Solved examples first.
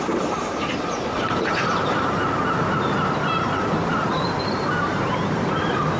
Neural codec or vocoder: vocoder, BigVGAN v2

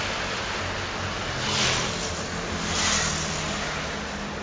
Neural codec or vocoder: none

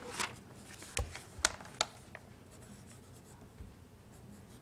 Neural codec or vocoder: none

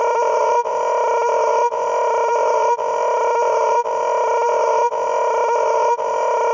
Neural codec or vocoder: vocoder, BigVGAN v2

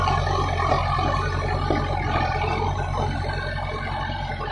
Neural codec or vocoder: none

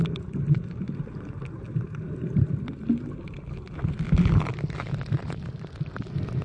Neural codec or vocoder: none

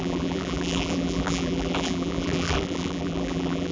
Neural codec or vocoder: vocoder, BigVGAN v2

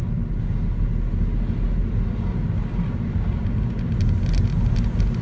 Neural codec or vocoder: none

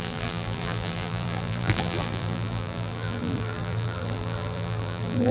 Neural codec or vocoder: vocoder, BigVGAN v2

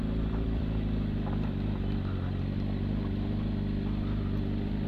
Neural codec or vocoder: none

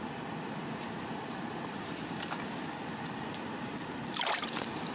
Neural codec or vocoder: none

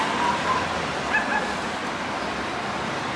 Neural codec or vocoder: vocoder, BigVGAN v2